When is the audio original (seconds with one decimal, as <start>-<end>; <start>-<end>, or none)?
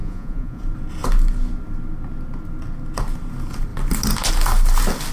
0.6-5.1